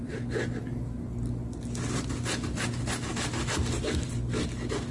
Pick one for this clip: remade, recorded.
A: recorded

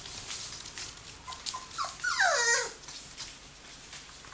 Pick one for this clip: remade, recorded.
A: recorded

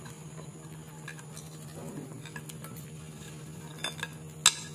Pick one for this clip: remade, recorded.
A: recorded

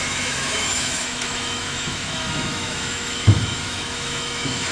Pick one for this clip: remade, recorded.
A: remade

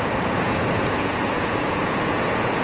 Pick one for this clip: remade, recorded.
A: remade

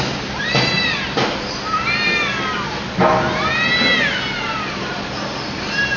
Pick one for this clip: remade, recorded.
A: recorded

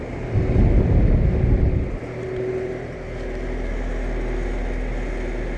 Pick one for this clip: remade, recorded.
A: recorded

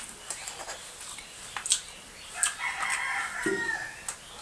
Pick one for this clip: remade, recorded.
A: recorded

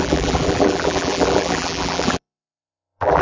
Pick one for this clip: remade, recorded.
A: remade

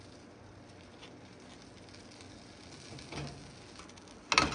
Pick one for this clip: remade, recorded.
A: recorded